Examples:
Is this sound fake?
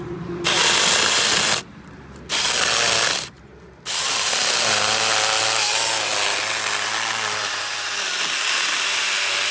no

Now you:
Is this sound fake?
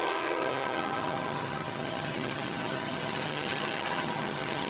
yes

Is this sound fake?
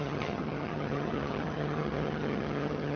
yes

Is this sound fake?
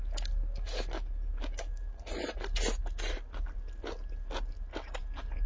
no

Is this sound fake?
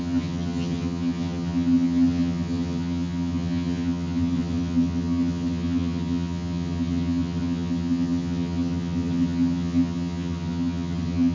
yes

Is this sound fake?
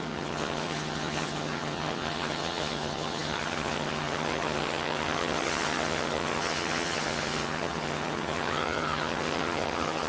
yes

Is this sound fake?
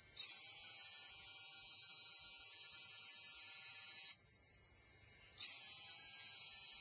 no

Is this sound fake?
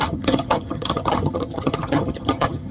yes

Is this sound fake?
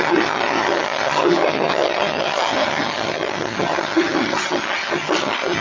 yes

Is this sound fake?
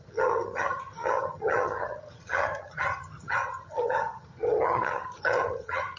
yes